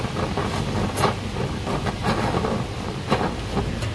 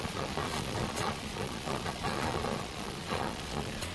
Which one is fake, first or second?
second